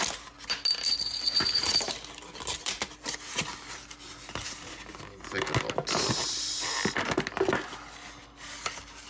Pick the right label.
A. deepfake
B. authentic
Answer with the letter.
B